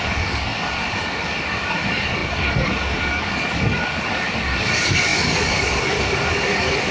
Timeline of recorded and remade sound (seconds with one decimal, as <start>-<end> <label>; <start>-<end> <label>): 0.0-6.9 remade